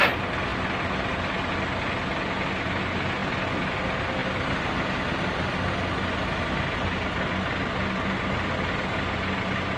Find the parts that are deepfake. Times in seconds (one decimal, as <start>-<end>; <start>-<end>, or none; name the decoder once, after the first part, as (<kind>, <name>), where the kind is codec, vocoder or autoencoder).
none